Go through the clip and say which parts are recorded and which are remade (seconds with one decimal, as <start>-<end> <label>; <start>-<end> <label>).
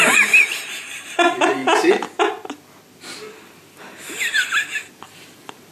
0.0-1.6 remade; 1.6-5.0 recorded; 5.0-5.7 remade